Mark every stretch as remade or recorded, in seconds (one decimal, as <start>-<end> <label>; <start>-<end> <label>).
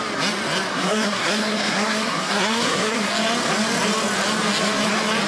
0.0-0.7 recorded; 0.7-3.1 remade; 3.1-5.3 recorded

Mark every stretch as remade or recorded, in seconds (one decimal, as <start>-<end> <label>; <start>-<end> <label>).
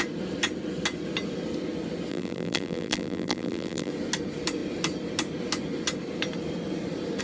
0.0-2.1 recorded; 2.1-3.9 remade; 3.9-7.2 recorded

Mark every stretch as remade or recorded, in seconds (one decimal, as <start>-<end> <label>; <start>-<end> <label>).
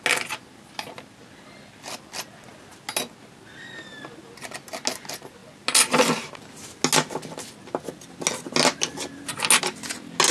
0.0-10.3 recorded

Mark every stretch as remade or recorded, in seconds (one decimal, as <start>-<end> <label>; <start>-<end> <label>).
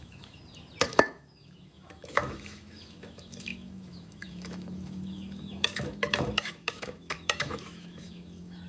0.0-0.4 remade; 0.4-0.9 recorded; 0.9-8.7 remade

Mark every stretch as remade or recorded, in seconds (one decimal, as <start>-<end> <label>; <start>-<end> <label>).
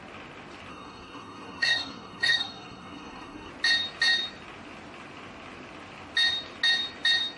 0.0-0.7 recorded; 0.7-3.5 remade; 3.5-7.4 recorded